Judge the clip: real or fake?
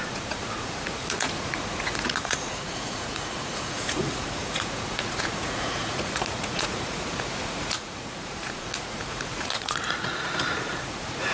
fake